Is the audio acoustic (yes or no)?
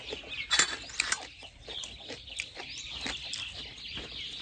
yes